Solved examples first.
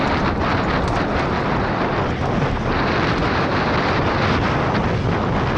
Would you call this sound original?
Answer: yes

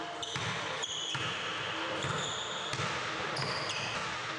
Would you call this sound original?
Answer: yes